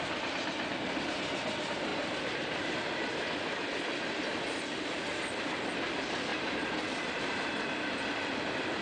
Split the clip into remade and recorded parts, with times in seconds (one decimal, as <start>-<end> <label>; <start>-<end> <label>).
0.0-1.9 recorded; 1.9-3.5 remade; 3.5-8.8 recorded

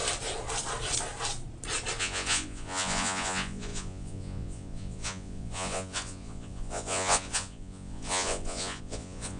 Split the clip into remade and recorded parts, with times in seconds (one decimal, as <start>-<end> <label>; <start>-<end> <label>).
0.0-2.0 recorded; 2.0-9.4 remade